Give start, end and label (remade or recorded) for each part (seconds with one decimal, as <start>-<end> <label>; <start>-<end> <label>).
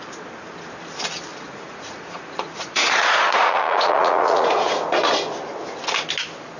0.0-1.3 recorded; 1.3-4.8 remade; 4.8-6.6 recorded